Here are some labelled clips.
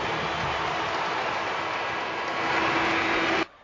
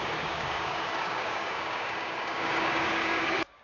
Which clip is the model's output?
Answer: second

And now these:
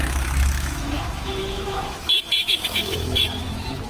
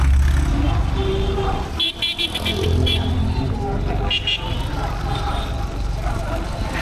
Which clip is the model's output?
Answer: first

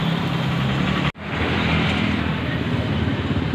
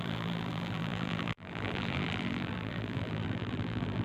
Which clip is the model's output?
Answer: second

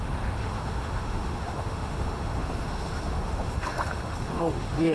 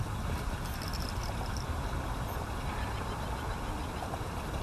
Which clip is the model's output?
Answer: first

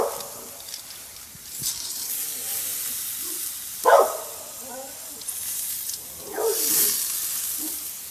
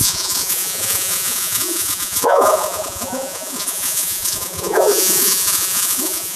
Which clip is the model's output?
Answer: second